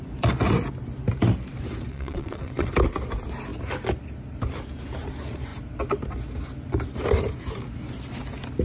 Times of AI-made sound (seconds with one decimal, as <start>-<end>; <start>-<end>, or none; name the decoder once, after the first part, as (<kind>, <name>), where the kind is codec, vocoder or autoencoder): 1.9-2.7 (vocoder, WaveNeXt)